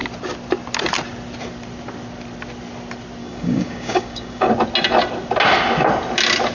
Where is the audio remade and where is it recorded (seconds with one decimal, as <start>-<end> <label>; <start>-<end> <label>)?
0.0-3.2 recorded; 3.2-4.5 remade; 4.5-6.5 recorded